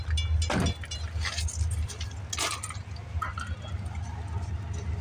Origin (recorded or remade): recorded